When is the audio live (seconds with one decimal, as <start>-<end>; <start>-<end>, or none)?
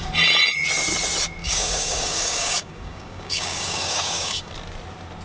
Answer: 0.0-1.4; 4.5-5.2